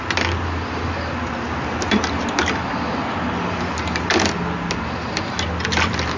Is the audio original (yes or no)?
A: yes